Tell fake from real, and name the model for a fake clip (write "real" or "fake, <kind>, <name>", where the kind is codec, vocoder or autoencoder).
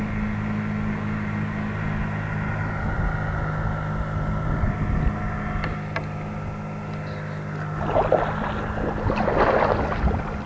real